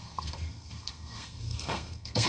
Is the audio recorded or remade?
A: remade